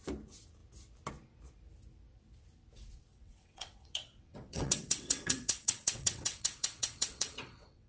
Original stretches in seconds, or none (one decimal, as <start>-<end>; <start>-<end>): 0.0-3.1